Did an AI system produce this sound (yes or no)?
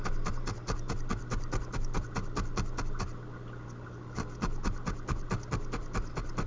no